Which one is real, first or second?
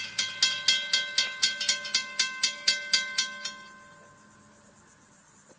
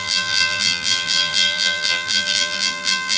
first